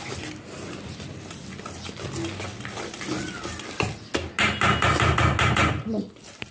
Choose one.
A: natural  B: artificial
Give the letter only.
A